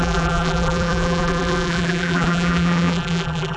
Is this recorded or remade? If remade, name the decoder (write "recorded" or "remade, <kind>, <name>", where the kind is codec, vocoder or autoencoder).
remade, vocoder, BigVGAN v2